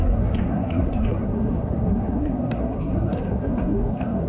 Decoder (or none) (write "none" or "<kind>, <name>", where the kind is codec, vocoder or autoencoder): codec, SNAC